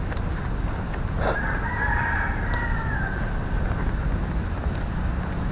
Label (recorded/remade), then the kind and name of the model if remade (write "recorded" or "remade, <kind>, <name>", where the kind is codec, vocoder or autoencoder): recorded